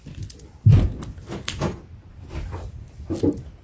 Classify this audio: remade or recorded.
recorded